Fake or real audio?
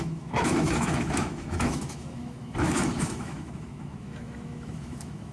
fake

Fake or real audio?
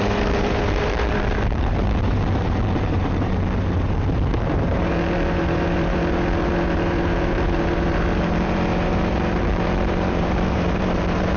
fake